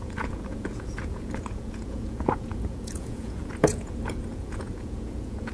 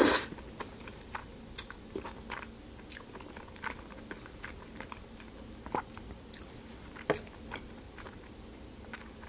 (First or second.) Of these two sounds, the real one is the second